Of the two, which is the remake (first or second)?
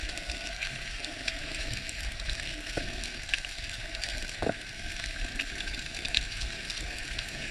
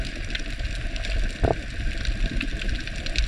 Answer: first